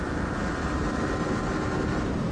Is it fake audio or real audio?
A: fake